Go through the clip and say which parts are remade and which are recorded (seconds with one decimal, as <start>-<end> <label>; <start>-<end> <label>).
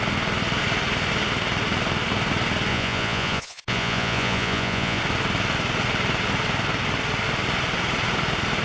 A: 0.0-2.7 recorded; 2.7-5.0 remade; 5.0-8.6 recorded